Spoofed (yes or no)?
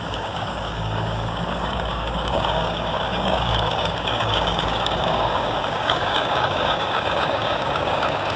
yes